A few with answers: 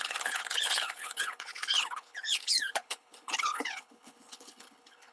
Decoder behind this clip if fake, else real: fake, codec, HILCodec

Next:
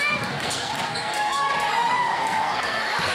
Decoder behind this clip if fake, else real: fake, codec, SNAC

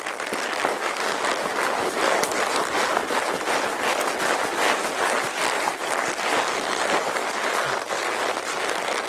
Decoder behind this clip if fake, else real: real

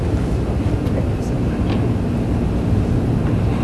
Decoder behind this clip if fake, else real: real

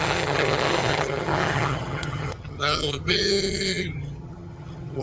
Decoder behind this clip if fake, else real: fake, vocoder, HiFi-GAN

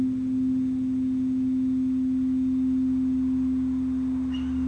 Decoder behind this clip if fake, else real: real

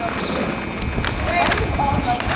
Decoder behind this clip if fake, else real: real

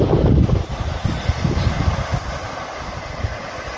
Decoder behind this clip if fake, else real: real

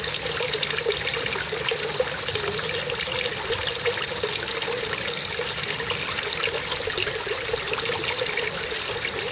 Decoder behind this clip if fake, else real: real